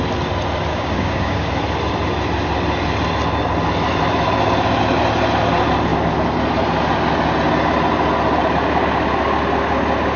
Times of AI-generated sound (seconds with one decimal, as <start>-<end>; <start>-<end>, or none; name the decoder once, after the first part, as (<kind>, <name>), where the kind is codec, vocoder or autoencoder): 0.7-1.5 (codec, DAC)